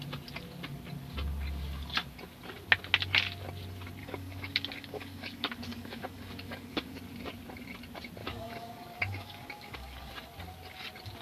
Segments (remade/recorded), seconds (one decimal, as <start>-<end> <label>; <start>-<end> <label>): 0.0-4.0 recorded; 4.0-7.0 remade; 7.0-8.2 recorded; 8.2-10.1 remade; 10.1-11.2 recorded

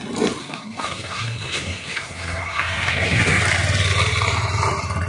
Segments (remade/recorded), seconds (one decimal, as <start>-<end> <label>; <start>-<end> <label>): 0.0-0.4 recorded; 0.4-3.4 remade; 3.4-5.1 recorded

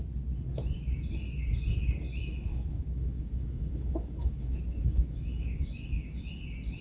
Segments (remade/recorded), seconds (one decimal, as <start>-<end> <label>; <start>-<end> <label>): 0.0-2.2 recorded; 2.2-6.3 remade; 6.3-6.8 recorded

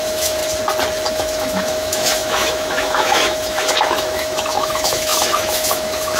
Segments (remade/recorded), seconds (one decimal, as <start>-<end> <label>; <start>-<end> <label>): 0.0-0.4 remade; 0.4-1.1 recorded; 1.1-6.2 remade

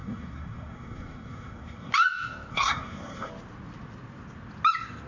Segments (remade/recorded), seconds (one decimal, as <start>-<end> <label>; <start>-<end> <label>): 0.0-1.9 remade; 1.9-2.5 recorded; 2.5-3.3 remade; 3.3-5.1 recorded

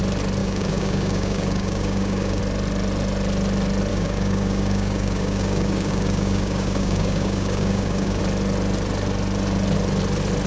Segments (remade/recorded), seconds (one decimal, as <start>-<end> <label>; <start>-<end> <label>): 0.0-0.4 recorded; 0.4-2.4 remade; 2.4-3.9 recorded; 3.9-8.2 remade; 8.2-10.5 recorded

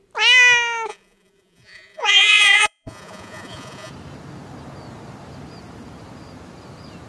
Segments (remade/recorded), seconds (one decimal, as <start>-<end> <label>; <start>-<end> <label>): 0.0-0.9 recorded; 0.9-3.9 remade; 3.9-7.1 recorded